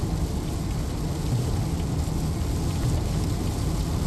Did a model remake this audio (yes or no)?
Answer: no